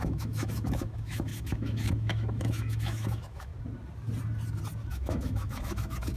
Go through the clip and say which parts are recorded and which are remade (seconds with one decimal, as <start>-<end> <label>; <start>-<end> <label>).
0.0-3.5 remade; 3.5-4.9 recorded; 4.9-6.2 remade